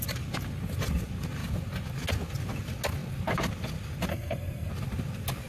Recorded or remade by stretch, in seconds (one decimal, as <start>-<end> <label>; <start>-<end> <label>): 0.0-4.1 recorded; 4.1-4.7 remade; 4.7-5.5 recorded